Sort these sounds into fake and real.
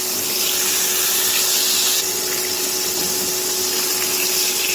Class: real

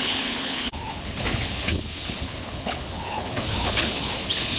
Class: fake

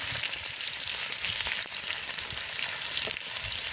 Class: real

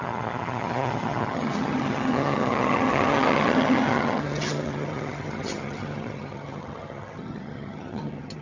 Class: fake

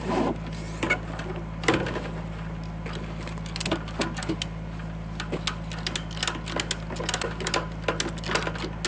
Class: real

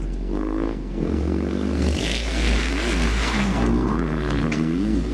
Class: fake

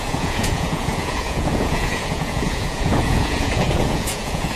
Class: fake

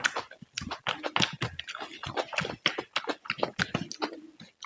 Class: real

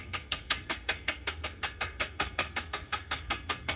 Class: fake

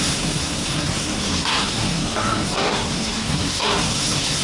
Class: fake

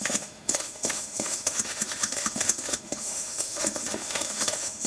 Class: fake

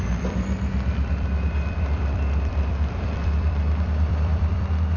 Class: fake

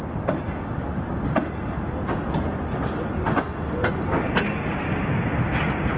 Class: real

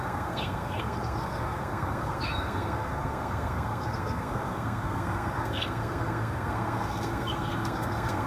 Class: fake